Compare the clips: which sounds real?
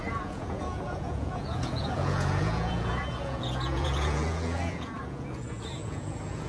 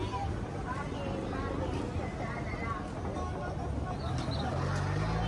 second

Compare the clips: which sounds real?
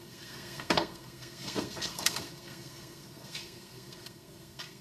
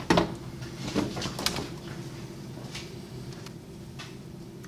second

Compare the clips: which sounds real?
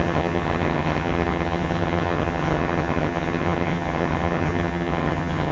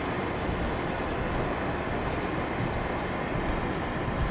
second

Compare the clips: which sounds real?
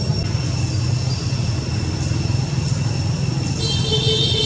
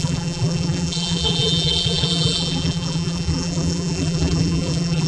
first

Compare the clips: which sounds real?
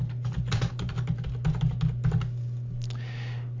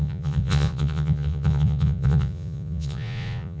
first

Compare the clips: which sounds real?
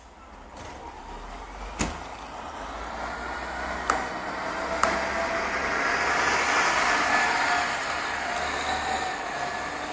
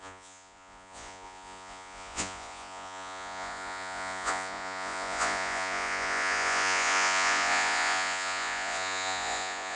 first